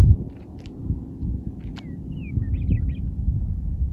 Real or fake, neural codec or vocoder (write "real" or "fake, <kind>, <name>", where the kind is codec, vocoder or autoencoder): real